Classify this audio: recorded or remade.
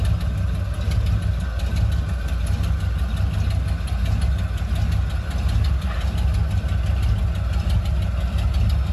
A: recorded